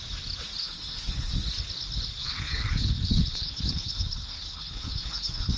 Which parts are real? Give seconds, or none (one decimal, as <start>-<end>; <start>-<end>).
0.0-0.6; 1.3-2.2